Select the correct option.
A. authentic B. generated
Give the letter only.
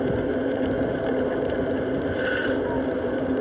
A